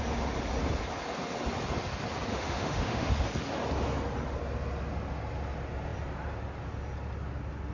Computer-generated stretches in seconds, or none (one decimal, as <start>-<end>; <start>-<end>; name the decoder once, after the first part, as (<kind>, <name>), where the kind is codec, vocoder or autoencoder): 2.3-3.1 (autoencoder, DAC-VAE)